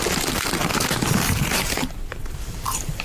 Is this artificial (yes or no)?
yes